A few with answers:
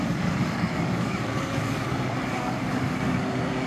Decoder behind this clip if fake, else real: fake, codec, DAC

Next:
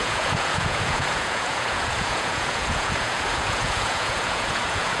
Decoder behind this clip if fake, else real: fake, vocoder, Vocos